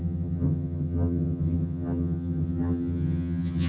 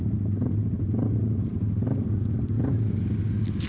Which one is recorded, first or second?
second